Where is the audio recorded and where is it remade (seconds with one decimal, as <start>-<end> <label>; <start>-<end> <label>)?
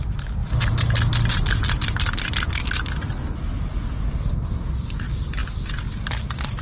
0.0-6.6 recorded